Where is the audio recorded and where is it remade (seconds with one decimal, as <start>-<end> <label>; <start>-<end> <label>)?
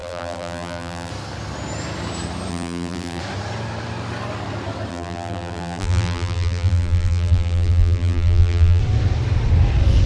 0.0-1.1 remade; 1.1-2.5 recorded; 2.5-3.2 remade; 3.2-4.9 recorded; 4.9-8.8 remade; 8.8-10.1 recorded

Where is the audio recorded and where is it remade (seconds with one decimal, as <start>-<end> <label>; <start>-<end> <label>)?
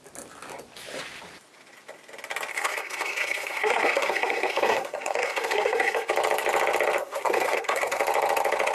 0.0-2.5 recorded; 2.5-6.1 remade; 6.1-7.0 recorded; 7.0-8.0 remade; 8.0-8.7 recorded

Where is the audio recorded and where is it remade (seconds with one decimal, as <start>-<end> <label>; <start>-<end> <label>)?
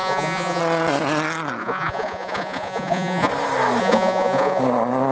0.0-0.6 remade; 0.6-1.6 recorded; 1.6-3.3 remade; 3.3-3.8 recorded; 3.8-4.6 remade; 4.6-5.1 recorded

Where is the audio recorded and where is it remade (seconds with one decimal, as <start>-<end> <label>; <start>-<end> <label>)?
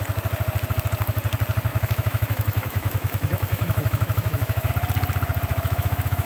0.0-1.7 recorded; 1.7-4.7 remade; 4.7-5.5 recorded; 5.5-6.3 remade